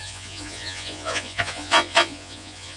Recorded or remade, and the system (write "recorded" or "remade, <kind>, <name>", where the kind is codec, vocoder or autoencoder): remade, vocoder, Vocos